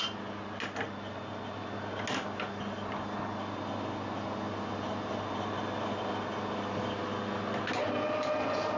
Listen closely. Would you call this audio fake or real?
real